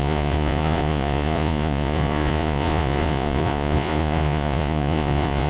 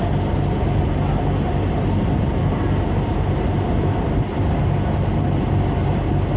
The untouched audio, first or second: second